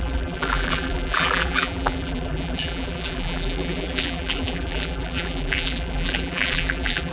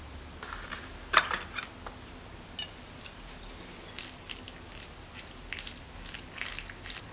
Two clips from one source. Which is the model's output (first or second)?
first